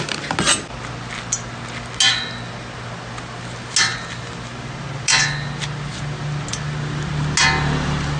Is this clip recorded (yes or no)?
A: yes